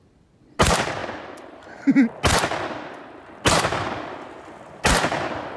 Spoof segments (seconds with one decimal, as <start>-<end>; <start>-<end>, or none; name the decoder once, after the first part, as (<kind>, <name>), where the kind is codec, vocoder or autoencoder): none